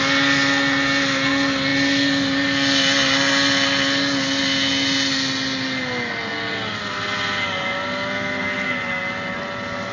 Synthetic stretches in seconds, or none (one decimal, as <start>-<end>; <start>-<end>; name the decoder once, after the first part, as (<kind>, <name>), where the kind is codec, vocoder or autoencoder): none